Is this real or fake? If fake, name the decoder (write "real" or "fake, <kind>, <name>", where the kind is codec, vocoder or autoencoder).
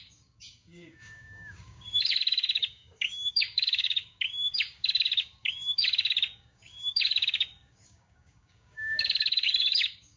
fake, codec, DAC